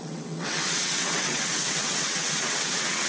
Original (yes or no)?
no